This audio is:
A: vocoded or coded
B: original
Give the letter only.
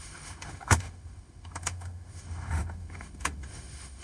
A